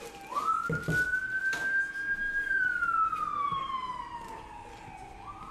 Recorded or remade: recorded